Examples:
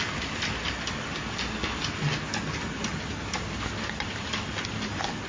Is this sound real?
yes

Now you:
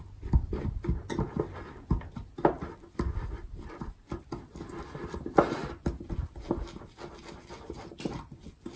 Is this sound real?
yes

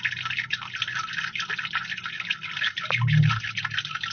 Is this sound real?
yes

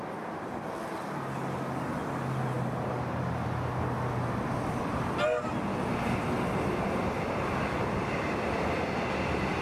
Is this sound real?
yes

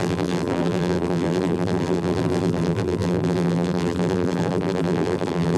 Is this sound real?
no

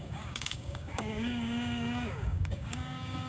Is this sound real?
no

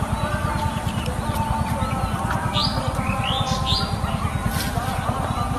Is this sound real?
yes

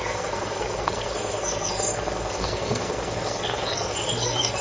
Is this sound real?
no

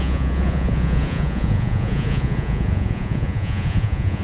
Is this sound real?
no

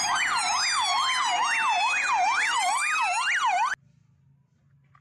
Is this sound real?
yes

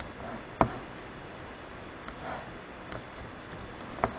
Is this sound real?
yes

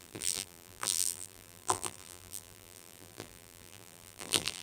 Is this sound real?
no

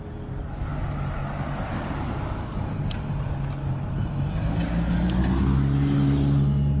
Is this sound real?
yes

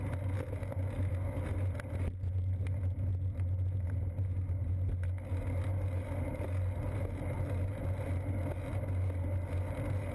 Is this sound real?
yes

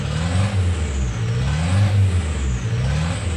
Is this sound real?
yes